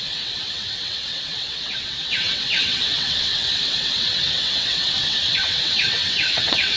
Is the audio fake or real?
fake